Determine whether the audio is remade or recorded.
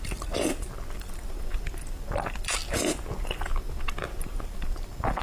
recorded